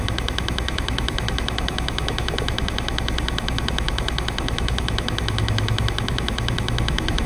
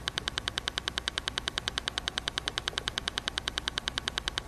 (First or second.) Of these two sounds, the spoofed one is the first